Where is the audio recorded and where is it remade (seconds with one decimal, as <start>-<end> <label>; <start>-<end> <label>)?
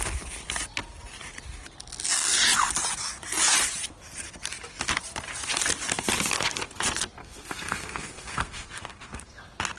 0.0-7.2 recorded; 7.2-9.4 remade; 9.4-9.8 recorded